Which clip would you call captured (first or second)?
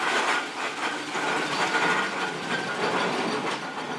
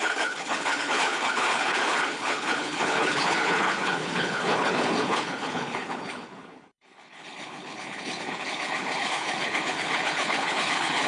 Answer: first